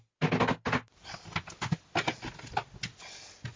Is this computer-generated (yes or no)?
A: no